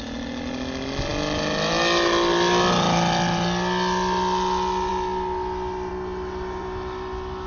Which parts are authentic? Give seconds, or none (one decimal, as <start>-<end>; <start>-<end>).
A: 0.0-7.5

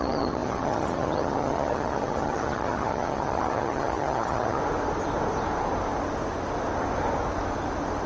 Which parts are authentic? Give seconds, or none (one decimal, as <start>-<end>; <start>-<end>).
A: 4.6-8.1